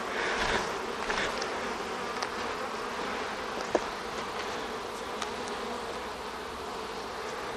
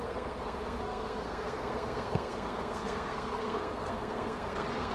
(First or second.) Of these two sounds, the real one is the first